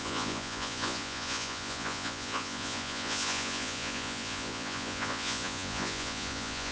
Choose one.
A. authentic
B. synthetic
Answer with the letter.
B